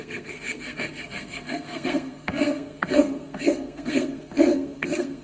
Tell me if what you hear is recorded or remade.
remade